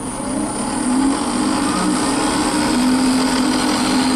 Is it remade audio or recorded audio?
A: recorded